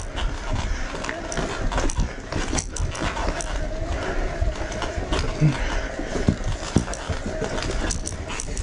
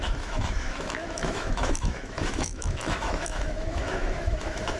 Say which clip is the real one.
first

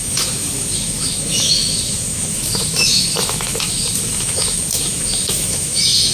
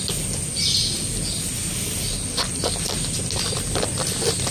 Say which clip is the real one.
second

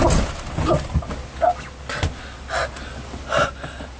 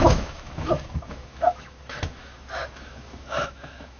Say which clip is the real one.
first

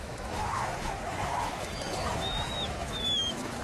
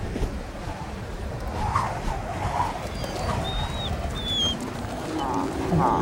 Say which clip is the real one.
second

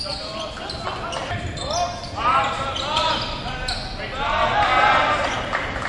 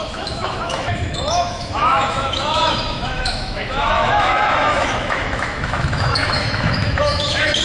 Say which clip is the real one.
first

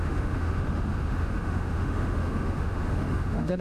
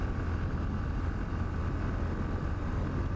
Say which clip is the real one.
second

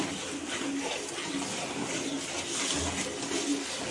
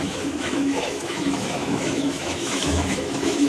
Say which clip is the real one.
first